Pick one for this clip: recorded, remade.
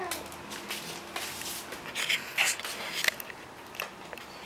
recorded